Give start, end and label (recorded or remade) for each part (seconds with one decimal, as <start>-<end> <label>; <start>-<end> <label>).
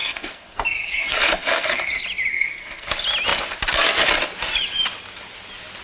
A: 0.0-1.9 remade; 1.9-2.3 recorded; 2.3-2.9 remade; 2.9-5.8 recorded